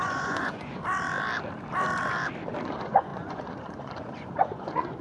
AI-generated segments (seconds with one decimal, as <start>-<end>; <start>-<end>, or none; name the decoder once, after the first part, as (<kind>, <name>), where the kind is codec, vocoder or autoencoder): 0.0-0.8 (vocoder, Vocos); 2.6-5.0